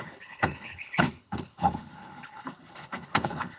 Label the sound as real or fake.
fake